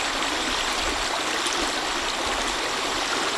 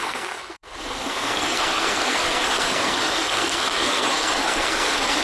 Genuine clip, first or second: first